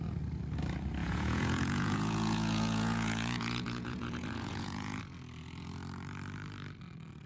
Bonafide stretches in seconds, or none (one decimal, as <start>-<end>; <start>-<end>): 0.0-1.0; 5.0-7.3